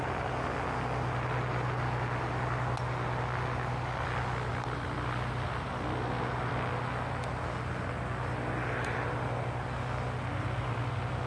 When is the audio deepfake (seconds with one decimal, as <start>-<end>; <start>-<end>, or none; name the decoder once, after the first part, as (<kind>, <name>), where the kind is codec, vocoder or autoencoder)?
4.5-5.7 (vocoder, BigVGAN v2)

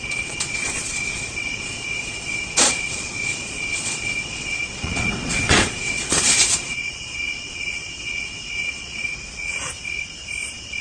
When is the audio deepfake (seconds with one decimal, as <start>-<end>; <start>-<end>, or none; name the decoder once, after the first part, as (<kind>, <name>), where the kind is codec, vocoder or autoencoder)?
0.0-9.7 (vocoder, Vocos)

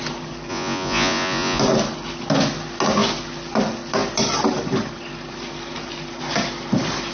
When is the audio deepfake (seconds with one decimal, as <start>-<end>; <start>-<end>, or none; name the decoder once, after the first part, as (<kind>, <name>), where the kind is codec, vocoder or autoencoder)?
0.5-1.6 (vocoder, Vocos)